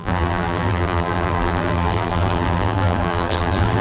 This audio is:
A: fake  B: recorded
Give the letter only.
A